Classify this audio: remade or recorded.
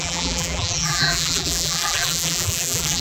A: remade